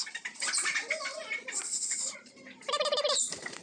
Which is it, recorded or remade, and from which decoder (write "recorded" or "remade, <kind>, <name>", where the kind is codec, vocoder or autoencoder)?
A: remade, vocoder, BigVGAN v2